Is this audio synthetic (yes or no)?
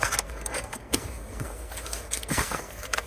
yes